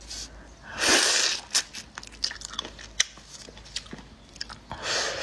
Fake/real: real